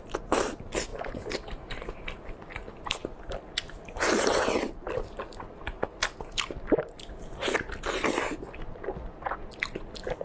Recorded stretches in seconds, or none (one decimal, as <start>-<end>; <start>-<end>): 0.0-10.2